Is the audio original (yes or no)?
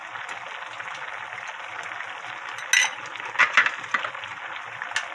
yes